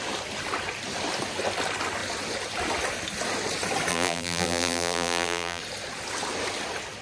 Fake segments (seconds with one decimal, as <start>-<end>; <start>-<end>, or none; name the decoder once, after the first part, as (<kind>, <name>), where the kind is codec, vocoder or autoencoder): 3.9-5.6 (vocoder, BigVGAN v2)